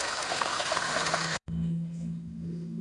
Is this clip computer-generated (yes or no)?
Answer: yes